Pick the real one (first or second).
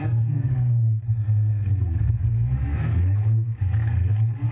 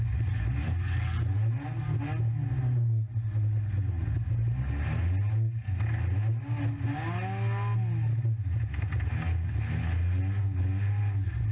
second